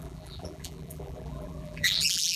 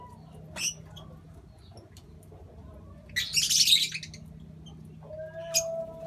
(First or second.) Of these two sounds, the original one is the second